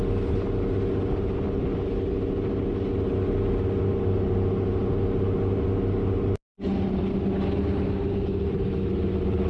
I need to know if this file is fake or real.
real